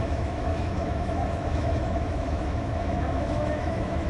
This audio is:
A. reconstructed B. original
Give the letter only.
A